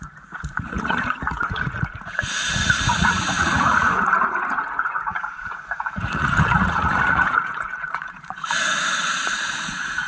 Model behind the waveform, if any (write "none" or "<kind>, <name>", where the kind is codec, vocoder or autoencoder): vocoder, Vocos